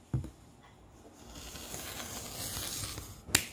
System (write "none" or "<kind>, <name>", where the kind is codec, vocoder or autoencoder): none